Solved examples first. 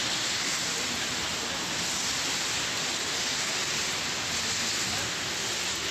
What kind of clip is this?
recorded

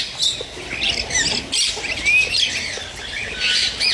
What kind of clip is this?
recorded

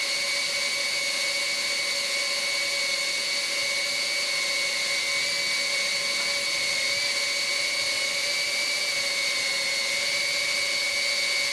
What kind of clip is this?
recorded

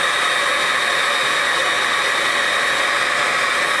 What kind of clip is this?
recorded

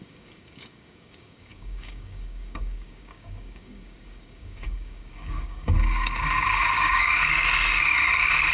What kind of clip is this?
remade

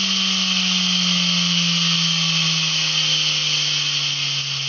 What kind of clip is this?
recorded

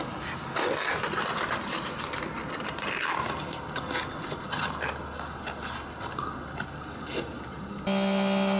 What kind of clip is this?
recorded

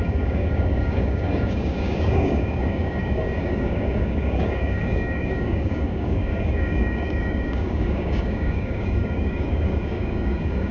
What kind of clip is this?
remade